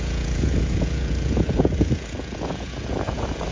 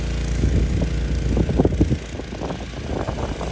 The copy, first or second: first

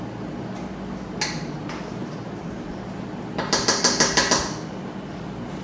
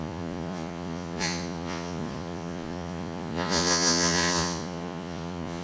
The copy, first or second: second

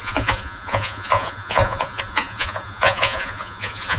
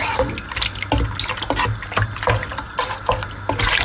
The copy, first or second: first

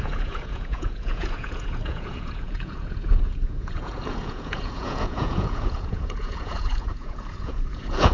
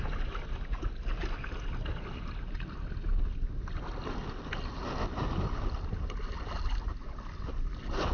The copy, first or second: first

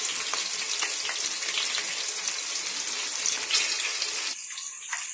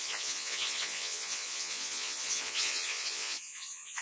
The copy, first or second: second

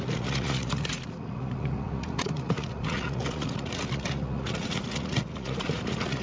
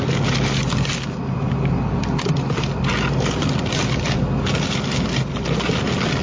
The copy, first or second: first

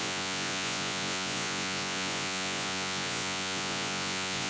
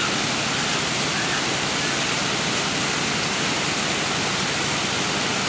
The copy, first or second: first